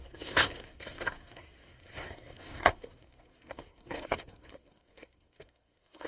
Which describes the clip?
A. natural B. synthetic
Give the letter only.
B